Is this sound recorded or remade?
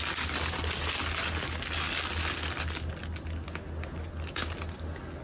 recorded